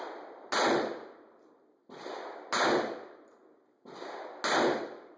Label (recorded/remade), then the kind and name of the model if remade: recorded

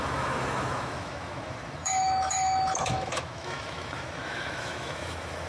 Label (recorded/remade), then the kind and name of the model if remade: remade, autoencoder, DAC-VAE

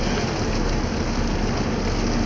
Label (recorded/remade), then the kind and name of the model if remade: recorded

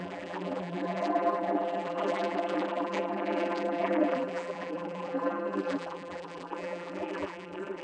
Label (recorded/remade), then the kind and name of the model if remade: remade, vocoder, BigVGAN v2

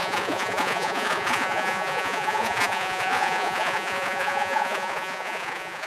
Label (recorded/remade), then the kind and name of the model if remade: remade, vocoder, Vocos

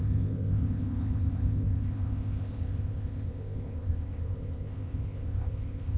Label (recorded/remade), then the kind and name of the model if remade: remade, codec, ZipCodec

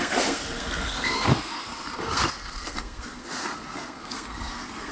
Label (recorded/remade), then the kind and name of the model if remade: remade, codec, SNAC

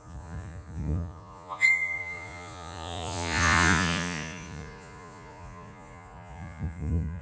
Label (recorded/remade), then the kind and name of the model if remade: remade, vocoder, Vocos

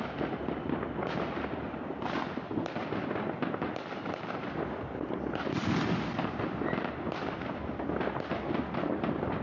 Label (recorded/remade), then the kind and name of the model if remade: recorded